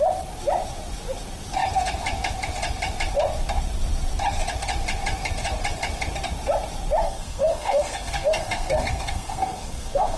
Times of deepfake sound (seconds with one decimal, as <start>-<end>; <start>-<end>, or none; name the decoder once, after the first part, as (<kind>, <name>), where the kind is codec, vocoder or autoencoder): 7.0-10.2 (codec, SNAC)